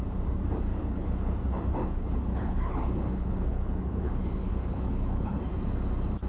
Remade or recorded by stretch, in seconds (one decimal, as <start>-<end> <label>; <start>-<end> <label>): 0.0-0.7 recorded; 0.7-1.3 remade; 1.3-1.8 recorded; 1.8-5.4 remade; 5.4-6.3 recorded